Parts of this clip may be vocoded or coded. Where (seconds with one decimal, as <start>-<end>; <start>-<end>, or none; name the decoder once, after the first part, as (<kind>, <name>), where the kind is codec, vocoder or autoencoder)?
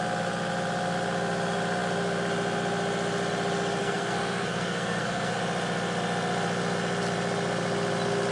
3.8-5.4 (codec, SNAC)